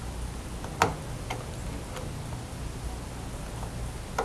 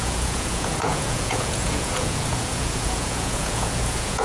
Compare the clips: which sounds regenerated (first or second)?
second